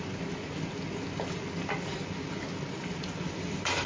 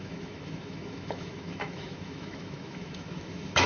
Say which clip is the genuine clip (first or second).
first